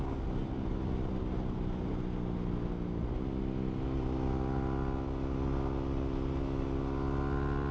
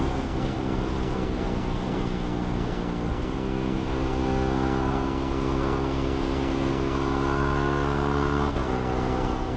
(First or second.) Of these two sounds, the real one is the first